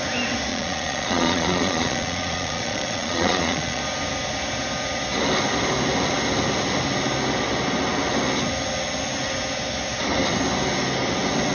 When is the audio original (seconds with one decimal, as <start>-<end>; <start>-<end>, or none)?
0.0-0.5; 3.8-11.5